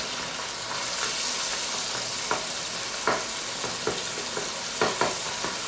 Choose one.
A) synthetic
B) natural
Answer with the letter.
B